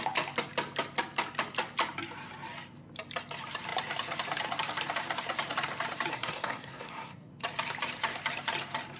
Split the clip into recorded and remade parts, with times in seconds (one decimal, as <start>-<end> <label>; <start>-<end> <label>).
0.0-6.1 recorded; 6.1-7.3 remade; 7.3-9.0 recorded